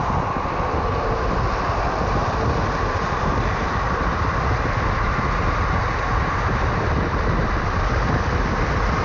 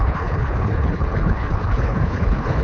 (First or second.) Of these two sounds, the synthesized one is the second